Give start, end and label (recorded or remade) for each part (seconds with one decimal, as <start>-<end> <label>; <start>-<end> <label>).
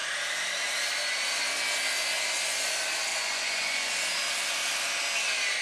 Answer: 0.0-3.1 recorded; 3.1-3.9 remade; 3.9-5.6 recorded